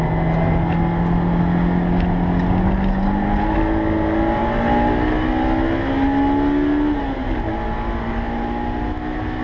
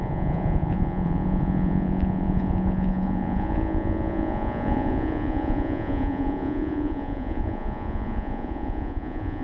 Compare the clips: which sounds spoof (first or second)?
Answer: second